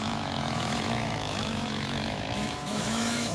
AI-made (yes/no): yes